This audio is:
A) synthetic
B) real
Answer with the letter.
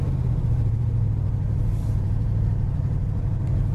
A